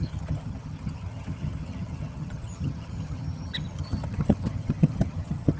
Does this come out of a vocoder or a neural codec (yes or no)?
yes